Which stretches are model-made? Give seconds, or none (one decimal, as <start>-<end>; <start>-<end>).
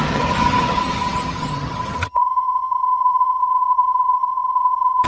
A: 0.0-5.1